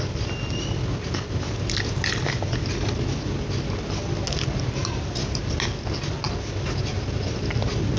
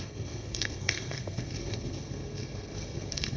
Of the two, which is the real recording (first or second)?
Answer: first